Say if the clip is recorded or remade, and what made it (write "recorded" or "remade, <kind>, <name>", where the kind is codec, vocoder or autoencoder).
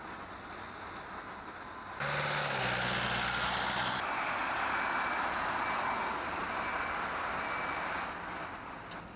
recorded